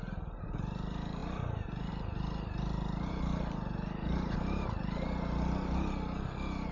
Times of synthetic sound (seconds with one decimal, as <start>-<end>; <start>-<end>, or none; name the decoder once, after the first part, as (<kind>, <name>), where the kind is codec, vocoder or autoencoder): none